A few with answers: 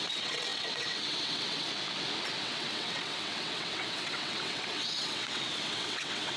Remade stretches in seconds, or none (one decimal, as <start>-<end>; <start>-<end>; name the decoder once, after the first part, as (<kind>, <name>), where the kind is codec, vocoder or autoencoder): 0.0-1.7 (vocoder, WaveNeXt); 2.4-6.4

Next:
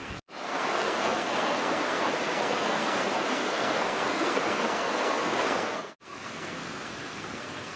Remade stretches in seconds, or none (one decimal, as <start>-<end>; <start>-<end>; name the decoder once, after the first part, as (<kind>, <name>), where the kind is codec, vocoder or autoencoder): 0.0-7.8 (codec, SNAC)

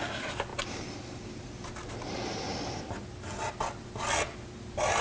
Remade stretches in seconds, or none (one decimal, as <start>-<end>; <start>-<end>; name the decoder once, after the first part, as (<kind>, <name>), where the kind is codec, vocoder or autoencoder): none

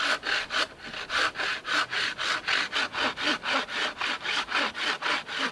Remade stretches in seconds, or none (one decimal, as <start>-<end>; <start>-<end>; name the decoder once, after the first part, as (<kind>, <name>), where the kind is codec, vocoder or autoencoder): 0.0-1.6 (vocoder, BigVGAN v2); 3.1-5.5

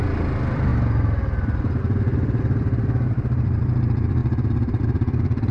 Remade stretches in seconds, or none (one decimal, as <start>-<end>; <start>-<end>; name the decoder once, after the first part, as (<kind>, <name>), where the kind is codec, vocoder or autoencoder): 0.0-0.7 (vocoder, BigVGAN v2); 1.8-4.2; 4.8-5.5

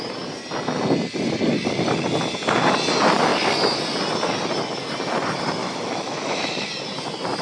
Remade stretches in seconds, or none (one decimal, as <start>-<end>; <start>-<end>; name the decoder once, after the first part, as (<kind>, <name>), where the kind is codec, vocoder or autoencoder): 5.6-6.5 (autoencoder, DAC-VAE)

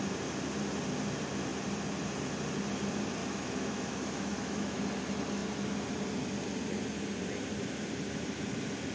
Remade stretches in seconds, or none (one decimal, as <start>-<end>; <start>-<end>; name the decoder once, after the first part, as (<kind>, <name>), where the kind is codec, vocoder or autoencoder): 3.2-4.8 (autoencoder, DAC-VAE)

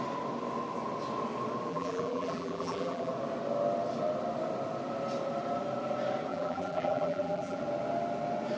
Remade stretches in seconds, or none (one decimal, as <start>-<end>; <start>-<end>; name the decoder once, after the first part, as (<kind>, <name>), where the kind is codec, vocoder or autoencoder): 1.7-3.1 (vocoder, BigVGAN v2); 6.3-7.6